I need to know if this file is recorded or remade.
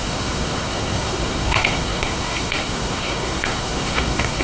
remade